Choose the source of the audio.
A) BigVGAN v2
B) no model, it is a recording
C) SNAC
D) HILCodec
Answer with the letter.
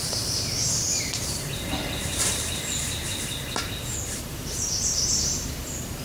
A